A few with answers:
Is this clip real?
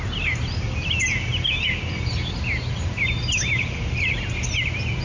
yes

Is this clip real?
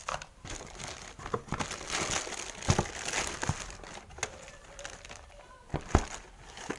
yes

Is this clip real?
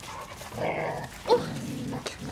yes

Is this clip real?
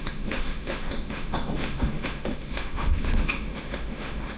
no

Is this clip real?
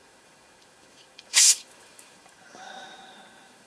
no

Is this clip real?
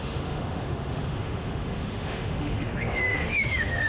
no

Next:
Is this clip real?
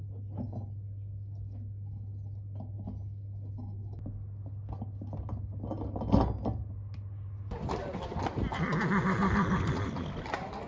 yes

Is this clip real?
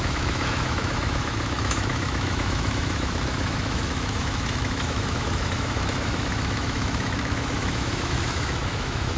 no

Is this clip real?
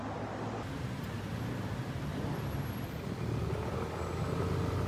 yes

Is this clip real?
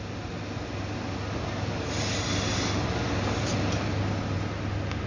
yes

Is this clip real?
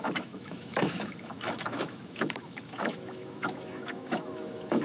no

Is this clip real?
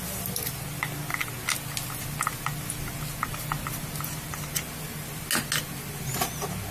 yes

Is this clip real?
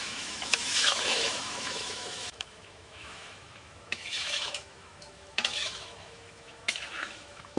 no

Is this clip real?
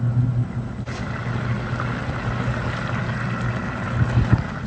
yes